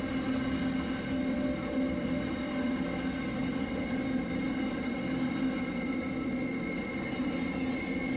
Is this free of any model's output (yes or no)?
yes